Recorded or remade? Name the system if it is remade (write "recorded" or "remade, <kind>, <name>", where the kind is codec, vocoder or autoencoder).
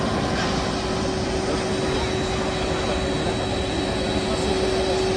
recorded